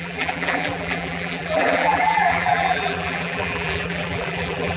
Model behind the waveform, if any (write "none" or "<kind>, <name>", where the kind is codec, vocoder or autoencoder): vocoder, BigVGAN v2